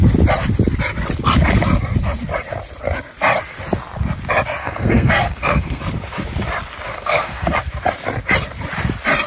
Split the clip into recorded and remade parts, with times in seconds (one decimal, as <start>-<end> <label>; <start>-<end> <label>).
0.0-4.6 recorded; 4.6-5.8 remade; 5.8-6.9 recorded; 6.9-7.7 remade; 7.7-9.3 recorded